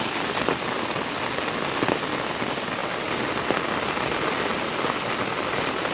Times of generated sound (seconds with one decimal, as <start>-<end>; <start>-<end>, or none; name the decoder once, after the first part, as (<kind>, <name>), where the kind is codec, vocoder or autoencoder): none